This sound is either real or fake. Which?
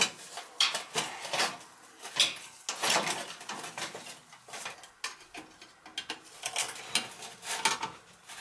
real